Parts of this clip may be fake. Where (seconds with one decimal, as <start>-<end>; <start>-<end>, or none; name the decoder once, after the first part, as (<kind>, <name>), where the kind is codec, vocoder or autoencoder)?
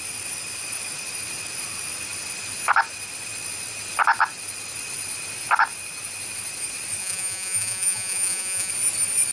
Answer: 7.0-8.7 (vocoder, Vocos)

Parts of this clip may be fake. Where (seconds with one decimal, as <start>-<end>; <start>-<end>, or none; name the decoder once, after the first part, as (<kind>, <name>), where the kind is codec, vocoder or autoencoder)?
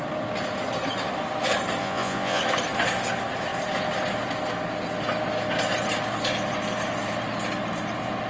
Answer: 1.8-2.4 (vocoder, Vocos)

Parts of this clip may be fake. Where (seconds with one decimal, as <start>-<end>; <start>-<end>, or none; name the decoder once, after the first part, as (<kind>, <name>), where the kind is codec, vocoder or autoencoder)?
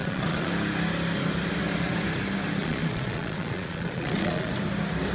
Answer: 0.0-0.5 (vocoder, Vocos); 2.6-4.5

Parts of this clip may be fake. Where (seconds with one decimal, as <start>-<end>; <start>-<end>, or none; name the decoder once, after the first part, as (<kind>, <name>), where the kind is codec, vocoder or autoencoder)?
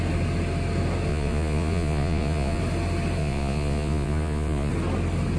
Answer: 1.1-2.6 (vocoder, Vocos); 3.2-4.7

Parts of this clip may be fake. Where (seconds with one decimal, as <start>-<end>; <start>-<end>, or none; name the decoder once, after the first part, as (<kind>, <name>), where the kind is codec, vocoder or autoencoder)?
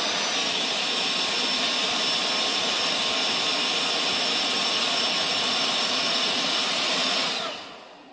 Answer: 2.5-3.0 (vocoder, Vocos); 4.6-8.1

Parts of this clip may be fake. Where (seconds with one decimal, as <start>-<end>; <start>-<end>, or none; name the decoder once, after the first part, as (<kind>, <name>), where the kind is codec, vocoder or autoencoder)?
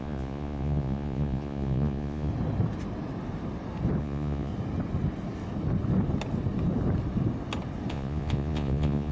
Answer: 0.0-2.3 (vocoder, Vocos); 4.0-4.5; 7.9-9.1